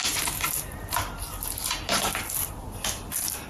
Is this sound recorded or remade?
recorded